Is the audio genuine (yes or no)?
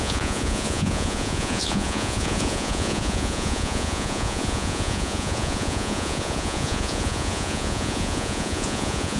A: no